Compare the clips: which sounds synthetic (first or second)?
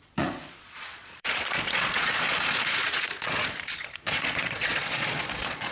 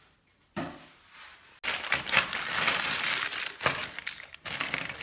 first